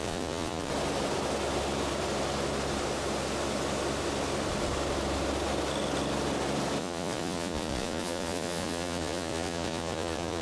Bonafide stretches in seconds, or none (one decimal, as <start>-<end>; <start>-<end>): 0.7-6.8